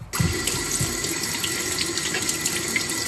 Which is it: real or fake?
real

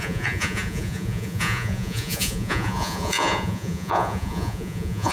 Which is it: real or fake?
fake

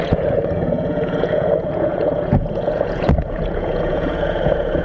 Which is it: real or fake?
fake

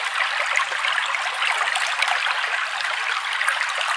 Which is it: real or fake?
real